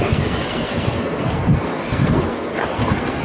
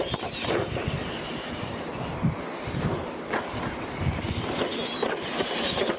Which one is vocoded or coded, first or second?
first